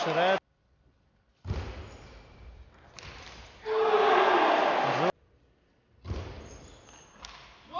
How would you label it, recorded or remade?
recorded